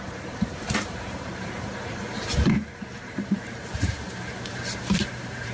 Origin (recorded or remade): remade